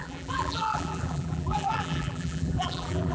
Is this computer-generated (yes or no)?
yes